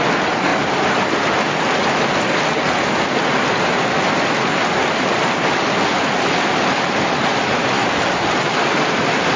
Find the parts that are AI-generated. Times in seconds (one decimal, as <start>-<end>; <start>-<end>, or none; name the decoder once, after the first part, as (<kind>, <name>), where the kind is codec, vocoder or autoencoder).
none